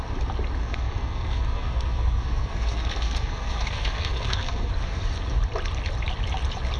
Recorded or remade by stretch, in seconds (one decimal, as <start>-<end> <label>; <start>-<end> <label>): 0.0-0.6 recorded; 0.6-4.7 remade; 4.7-6.8 recorded